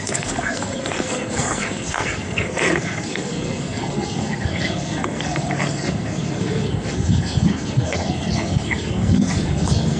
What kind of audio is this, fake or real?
fake